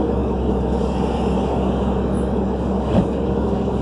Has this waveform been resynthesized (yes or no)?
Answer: yes